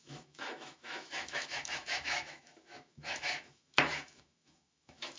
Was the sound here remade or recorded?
remade